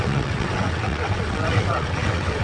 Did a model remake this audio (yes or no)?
yes